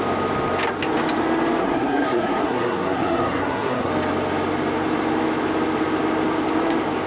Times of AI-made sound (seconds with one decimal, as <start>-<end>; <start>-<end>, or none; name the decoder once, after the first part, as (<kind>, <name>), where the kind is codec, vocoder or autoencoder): 1.6-3.9 (codec, SNAC)